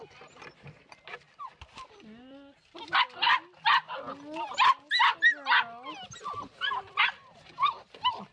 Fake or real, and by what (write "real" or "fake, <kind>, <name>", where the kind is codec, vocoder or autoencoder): real